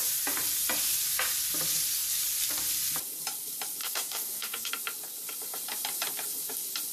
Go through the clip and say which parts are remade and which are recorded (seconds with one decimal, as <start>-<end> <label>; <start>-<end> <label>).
0.0-3.8 recorded; 3.8-4.7 remade; 4.7-6.9 recorded